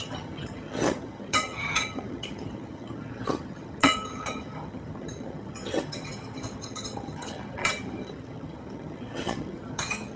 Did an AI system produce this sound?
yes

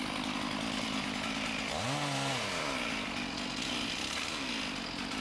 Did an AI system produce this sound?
no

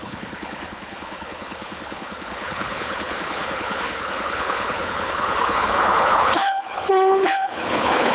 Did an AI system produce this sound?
yes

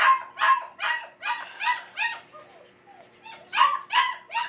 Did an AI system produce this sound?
no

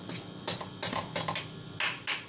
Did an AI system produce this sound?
no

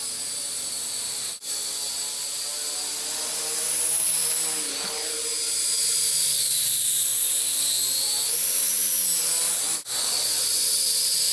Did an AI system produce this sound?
no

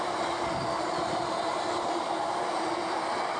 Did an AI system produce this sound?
no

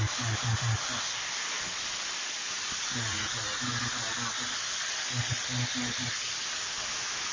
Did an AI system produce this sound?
no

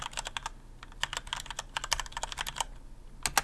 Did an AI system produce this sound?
no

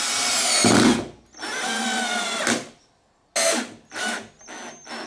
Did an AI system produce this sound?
no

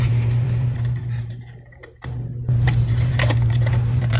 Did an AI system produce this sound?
yes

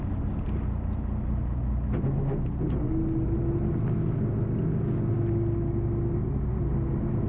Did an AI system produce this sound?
no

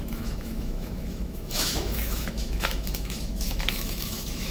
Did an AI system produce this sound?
yes